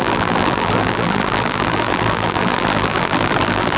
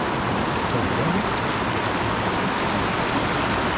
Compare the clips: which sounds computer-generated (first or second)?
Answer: first